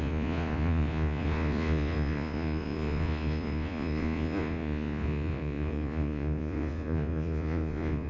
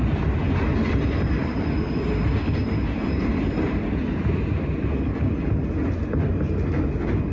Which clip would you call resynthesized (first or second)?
first